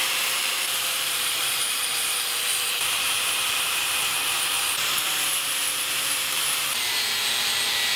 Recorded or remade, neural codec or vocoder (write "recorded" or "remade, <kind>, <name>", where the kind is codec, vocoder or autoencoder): remade, vocoder, BigVGAN v2